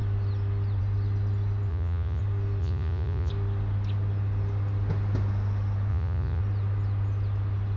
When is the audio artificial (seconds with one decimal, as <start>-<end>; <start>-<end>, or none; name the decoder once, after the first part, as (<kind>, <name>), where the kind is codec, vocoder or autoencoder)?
1.7-2.2 (vocoder, Vocos); 2.6-3.3; 5.9-6.4